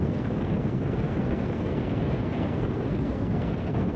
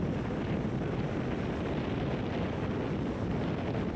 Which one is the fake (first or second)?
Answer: first